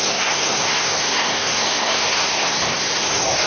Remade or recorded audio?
remade